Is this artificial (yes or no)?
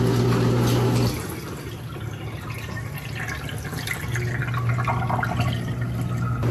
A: no